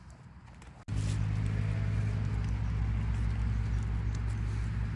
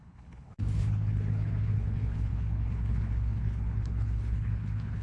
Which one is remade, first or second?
second